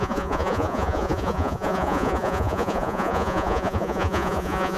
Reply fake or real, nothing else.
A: fake